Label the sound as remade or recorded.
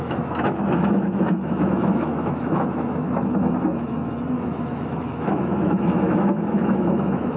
remade